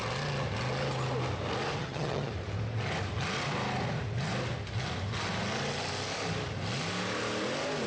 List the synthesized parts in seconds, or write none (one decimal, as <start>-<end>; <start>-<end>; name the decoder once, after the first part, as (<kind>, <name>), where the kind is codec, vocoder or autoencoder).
1.8-2.3 (vocoder, HiFi-GAN)